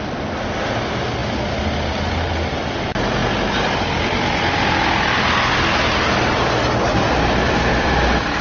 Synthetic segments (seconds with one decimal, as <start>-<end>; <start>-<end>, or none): 7.7-8.4